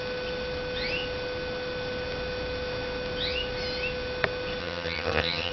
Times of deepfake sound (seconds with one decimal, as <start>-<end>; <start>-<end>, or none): 4.6-5.5